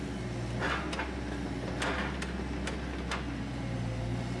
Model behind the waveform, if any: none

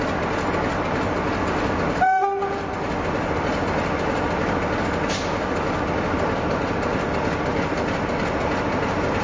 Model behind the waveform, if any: none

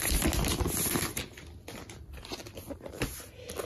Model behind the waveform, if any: none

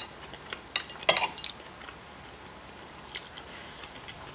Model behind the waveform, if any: none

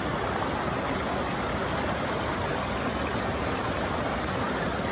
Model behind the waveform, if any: none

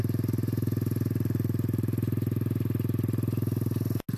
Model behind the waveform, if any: none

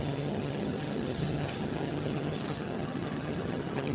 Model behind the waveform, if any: vocoder, HiFi-GAN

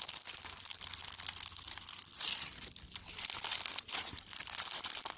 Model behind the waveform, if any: none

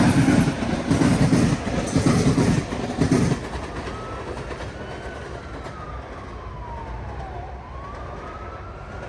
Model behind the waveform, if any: none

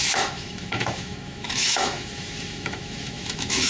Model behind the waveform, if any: autoencoder, DAC-VAE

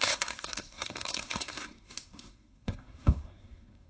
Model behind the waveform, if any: codec, SNAC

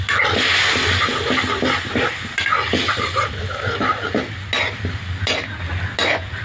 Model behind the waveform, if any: none